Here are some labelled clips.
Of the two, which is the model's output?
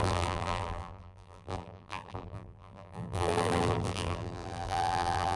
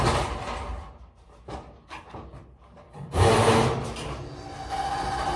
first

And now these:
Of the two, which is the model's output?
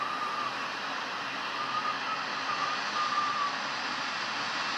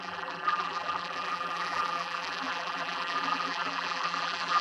second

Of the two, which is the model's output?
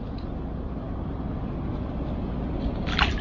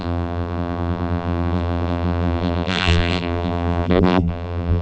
second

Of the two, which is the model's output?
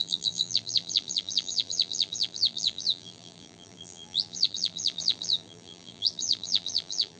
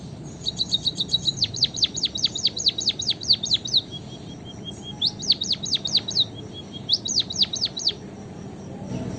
first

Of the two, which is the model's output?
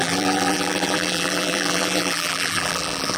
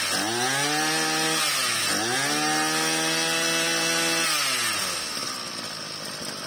first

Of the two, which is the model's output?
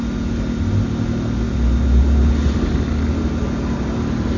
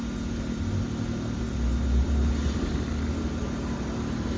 second